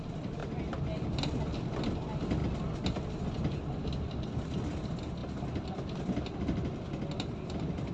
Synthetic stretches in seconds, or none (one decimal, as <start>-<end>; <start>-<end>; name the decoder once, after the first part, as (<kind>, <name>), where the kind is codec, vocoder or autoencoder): none